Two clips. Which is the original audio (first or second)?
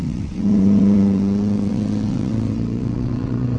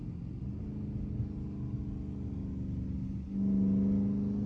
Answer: second